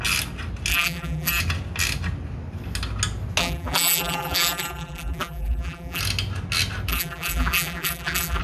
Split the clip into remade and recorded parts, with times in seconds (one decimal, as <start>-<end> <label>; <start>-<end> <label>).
0.0-0.7 recorded; 0.7-1.4 remade; 1.4-3.4 recorded; 3.4-6.0 remade; 6.0-6.9 recorded; 6.9-8.4 remade